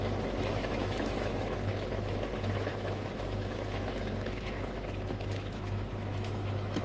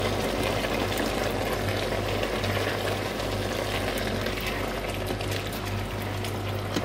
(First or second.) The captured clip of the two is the second